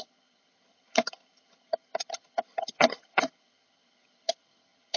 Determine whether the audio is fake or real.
fake